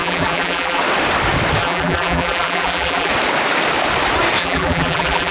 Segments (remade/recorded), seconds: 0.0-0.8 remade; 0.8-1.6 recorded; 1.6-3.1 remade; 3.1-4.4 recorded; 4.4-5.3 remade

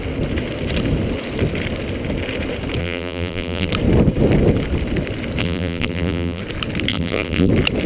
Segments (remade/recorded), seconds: 0.0-2.8 recorded; 2.8-3.7 remade; 3.7-5.4 recorded; 5.4-6.4 remade; 6.4-6.9 recorded; 6.9-7.5 remade; 7.5-7.9 recorded

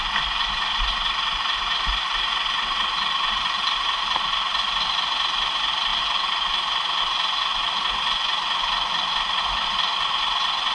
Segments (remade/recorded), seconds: 0.0-10.7 recorded

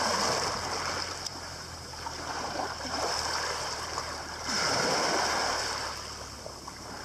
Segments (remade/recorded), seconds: 0.0-1.3 recorded; 1.3-5.2 remade; 5.2-7.0 recorded

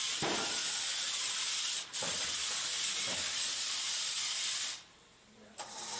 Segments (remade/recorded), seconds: 0.0-0.6 recorded; 0.6-4.2 remade; 4.2-6.0 recorded

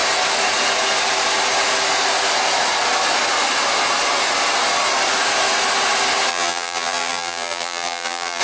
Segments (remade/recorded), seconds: 0.0-6.3 recorded; 6.3-8.4 remade

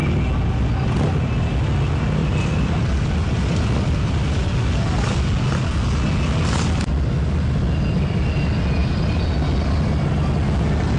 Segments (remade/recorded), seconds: 0.0-2.2 recorded; 2.2-5.2 remade; 5.2-8.8 recorded; 8.8-10.3 remade; 10.3-11.0 recorded

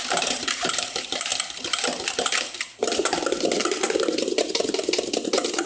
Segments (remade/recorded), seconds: 0.0-1.3 remade; 1.3-4.4 recorded; 4.4-5.7 remade